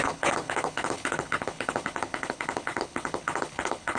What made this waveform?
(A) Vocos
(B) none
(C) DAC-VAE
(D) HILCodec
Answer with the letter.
D